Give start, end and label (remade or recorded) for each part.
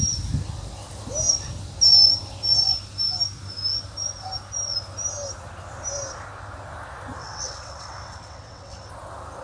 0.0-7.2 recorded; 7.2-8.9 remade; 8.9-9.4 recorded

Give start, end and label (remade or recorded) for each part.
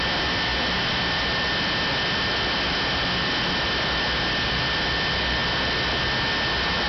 0.0-6.9 recorded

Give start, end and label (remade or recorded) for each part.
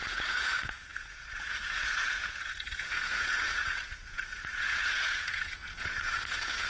0.0-6.7 remade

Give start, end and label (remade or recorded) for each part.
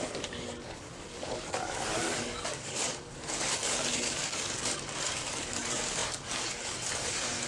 0.0-7.5 remade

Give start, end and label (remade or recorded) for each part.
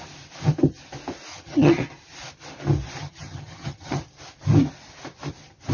0.0-1.3 recorded; 1.3-1.8 remade; 1.8-3.0 recorded; 3.0-4.0 remade; 4.0-5.7 recorded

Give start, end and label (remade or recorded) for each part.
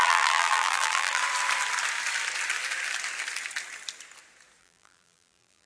0.0-1.2 remade; 1.2-4.6 recorded; 4.6-5.7 remade